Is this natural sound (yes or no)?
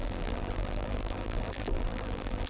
no